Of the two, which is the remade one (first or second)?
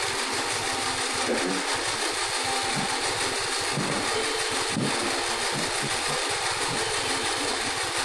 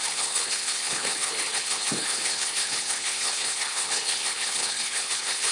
second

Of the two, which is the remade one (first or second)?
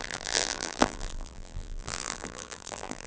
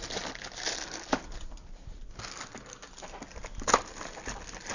first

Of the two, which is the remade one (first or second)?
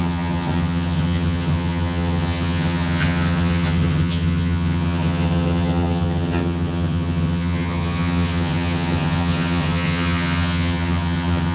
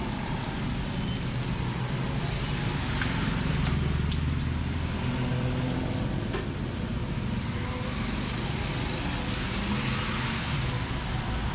first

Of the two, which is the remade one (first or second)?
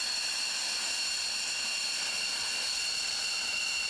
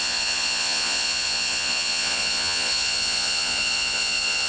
second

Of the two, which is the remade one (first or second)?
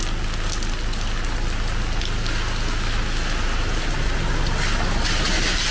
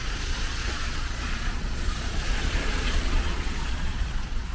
second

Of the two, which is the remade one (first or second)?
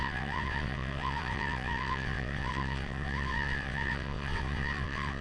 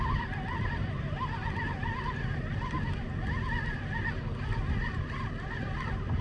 first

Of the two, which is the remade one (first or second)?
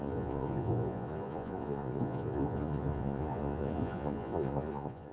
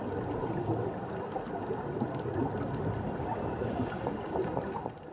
first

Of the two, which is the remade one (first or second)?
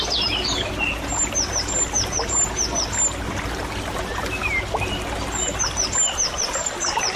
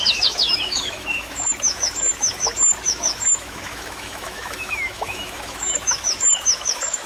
second